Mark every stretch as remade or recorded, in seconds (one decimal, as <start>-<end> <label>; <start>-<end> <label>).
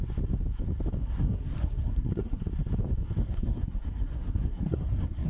0.0-1.0 recorded; 1.0-2.4 remade; 2.4-3.2 recorded; 3.2-5.3 remade